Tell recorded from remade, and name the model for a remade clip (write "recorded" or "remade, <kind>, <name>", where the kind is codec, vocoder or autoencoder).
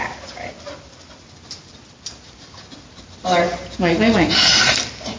recorded